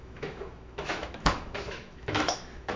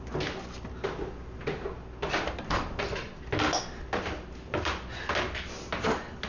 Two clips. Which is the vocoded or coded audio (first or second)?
first